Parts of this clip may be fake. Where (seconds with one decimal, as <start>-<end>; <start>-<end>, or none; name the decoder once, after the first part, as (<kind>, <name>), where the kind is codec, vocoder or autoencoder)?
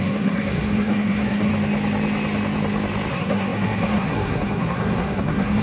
0.0-1.5 (codec, SNAC); 3.1-5.6